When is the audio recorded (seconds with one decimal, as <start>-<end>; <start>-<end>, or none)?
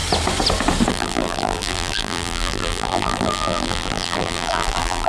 0.0-0.9